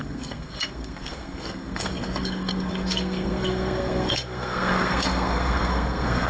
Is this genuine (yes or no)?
no